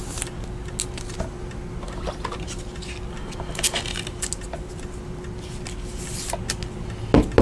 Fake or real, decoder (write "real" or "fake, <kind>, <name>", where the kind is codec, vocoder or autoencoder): real